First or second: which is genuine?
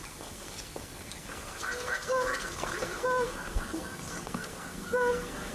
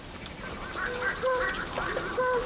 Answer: second